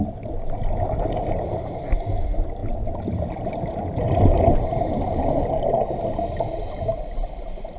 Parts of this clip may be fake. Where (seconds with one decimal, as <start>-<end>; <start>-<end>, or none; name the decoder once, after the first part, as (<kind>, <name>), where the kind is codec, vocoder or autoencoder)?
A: none